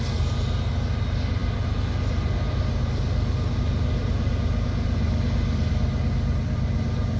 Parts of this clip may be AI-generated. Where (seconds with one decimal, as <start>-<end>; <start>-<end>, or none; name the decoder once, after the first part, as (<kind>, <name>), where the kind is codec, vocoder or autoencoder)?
none